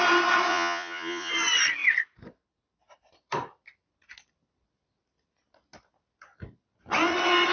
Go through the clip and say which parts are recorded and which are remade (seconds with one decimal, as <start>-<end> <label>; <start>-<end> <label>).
0.0-0.5 recorded; 0.5-1.3 remade; 1.3-7.5 recorded